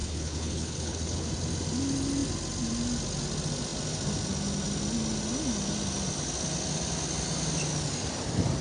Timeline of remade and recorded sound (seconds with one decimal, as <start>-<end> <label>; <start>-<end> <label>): 0.0-1.3 remade; 1.3-8.6 recorded